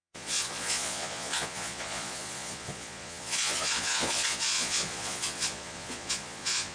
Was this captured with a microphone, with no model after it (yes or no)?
no